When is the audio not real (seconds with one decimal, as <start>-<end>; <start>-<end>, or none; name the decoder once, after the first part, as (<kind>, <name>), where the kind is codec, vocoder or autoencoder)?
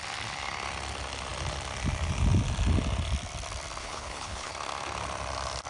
3.8-4.5 (codec, HILCodec)